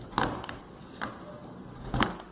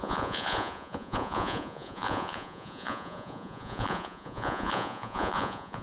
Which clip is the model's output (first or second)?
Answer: second